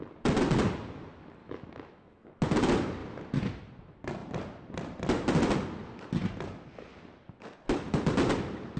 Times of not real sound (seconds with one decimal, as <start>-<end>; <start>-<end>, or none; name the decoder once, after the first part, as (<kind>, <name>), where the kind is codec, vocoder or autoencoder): 1.4-2.3 (autoencoder, DAC-VAE)